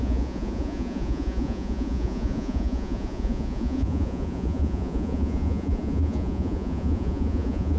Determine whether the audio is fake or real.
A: fake